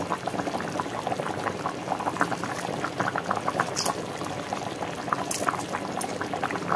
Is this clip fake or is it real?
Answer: real